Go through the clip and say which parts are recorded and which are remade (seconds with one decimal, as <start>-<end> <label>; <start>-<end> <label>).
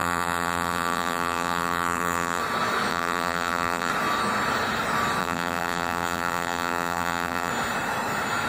0.0-2.4 remade; 2.4-2.9 recorded; 2.9-3.9 remade; 3.9-5.2 recorded; 5.2-7.5 remade; 7.5-8.5 recorded